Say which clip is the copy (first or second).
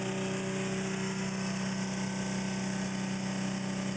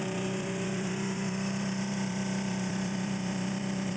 second